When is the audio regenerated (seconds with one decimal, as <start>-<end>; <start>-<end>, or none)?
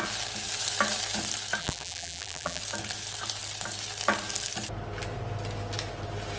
1.6-2.6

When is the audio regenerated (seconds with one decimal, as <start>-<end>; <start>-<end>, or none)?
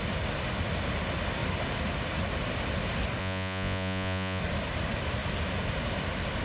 3.2-4.4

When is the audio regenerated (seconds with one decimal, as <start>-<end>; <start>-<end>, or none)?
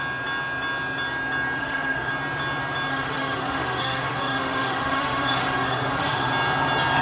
1.6-2.1; 2.9-6.3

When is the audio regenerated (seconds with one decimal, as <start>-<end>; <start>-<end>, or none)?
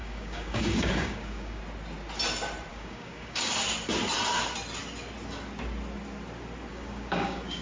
0.0-1.6; 2.7-3.5; 6.7-7.6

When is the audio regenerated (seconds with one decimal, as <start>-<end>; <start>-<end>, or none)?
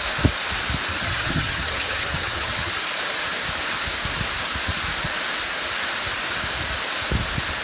0.9-2.7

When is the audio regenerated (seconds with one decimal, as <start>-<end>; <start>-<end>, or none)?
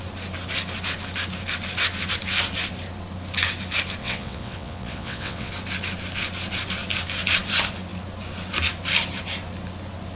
4.0-5.5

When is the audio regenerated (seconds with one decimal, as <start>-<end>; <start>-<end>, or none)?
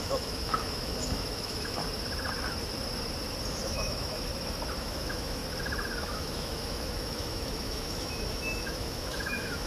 0.0-1.8; 3.5-4.3; 4.8-5.4; 6.0-9.7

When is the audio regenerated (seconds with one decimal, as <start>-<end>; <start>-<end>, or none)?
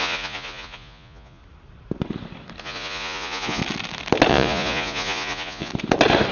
0.0-1.4; 2.6-3.6; 4.3-5.7